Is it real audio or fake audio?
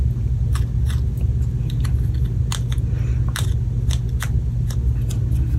real